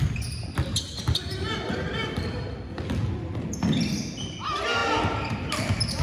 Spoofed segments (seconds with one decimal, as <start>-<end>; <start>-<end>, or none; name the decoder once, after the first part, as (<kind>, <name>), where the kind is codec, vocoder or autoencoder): none